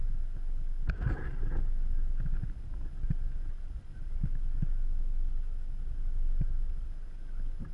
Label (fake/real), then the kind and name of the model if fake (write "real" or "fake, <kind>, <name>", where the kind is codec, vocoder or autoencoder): real